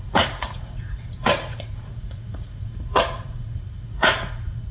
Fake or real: fake